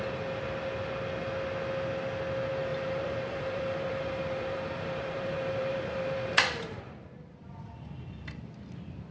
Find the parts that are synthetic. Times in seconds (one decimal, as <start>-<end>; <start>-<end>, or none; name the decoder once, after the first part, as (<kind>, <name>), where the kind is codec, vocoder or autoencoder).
2.7-6.8 (vocoder, BigVGAN v2)